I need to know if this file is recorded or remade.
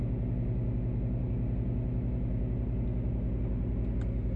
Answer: recorded